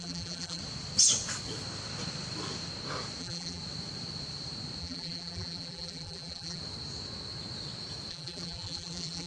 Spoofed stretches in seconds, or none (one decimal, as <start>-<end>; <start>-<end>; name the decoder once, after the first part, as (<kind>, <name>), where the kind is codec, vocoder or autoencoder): 0.0-0.6 (vocoder, BigVGAN v2); 3.2-3.6; 4.8-6.6; 8.1-9.3